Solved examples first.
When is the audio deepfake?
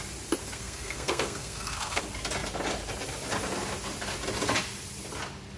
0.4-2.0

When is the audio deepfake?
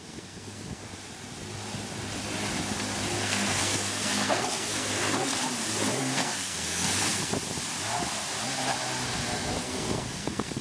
0.0-0.8; 3.2-5.3; 6.0-7.3; 9.6-10.6